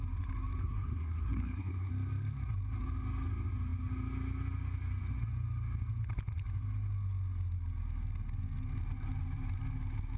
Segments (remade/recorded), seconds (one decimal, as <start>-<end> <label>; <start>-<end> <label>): 0.0-0.6 recorded; 0.6-1.9 remade; 1.9-10.2 recorded